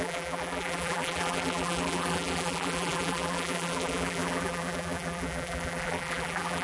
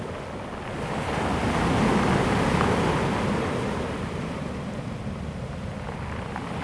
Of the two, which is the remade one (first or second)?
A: first